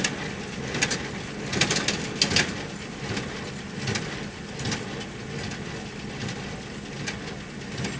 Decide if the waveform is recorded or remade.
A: recorded